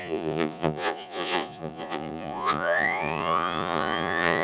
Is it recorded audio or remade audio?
remade